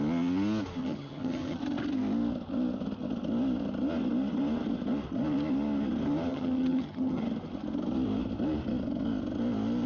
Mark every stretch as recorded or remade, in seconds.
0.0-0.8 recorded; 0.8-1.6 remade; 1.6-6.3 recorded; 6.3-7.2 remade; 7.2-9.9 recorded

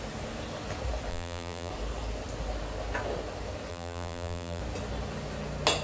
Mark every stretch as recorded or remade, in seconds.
0.0-1.1 recorded; 1.1-1.7 remade; 1.7-3.7 recorded; 3.7-4.6 remade; 4.6-5.8 recorded

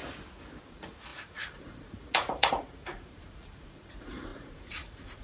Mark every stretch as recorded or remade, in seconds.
0.0-0.7 recorded; 0.7-5.2 remade

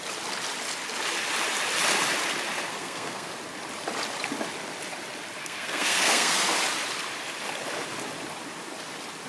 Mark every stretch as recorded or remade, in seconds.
0.0-2.7 recorded; 2.7-3.3 remade; 3.3-5.4 recorded; 5.4-6.4 remade; 6.4-9.3 recorded

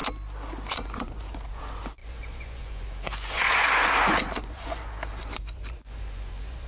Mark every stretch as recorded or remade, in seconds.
0.0-0.7 recorded; 0.7-6.7 remade